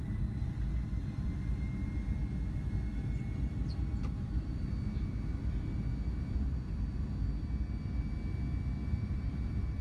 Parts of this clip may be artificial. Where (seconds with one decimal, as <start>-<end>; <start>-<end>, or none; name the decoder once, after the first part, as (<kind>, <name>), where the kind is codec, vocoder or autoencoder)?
4.0-4.7 (vocoder, BigVGAN v2); 8.9-9.8